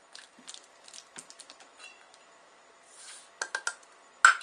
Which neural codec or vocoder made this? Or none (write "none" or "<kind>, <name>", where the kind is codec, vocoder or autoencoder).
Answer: none